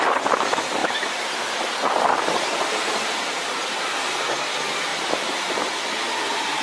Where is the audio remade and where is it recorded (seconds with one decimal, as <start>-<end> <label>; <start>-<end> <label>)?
0.0-0.8 recorded; 0.8-4.2 remade; 4.2-4.9 recorded; 4.9-5.5 remade; 5.5-6.6 recorded